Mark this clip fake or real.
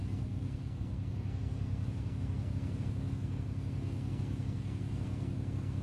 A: fake